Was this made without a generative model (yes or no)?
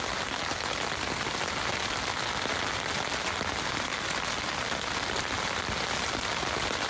yes